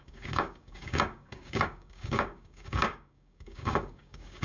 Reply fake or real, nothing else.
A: fake